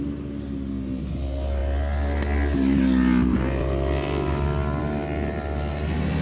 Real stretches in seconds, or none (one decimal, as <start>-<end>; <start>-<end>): 0.0-6.2